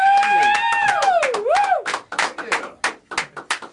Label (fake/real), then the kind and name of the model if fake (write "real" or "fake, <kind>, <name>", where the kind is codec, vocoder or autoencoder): real